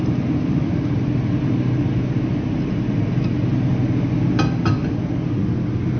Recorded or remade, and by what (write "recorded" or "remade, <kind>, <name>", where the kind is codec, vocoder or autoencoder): recorded